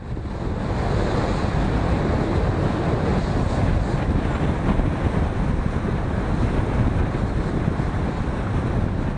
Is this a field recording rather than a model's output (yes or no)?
yes